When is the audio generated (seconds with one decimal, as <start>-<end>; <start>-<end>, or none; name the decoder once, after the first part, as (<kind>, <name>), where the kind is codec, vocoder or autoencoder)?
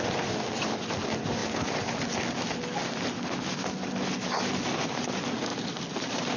5.5-6.4 (vocoder, BigVGAN v2)